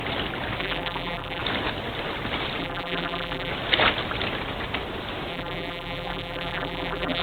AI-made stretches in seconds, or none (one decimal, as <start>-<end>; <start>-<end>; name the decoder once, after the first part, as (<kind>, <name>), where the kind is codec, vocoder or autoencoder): 0.6-1.4 (vocoder, BigVGAN v2); 2.6-3.5; 5.3-7.2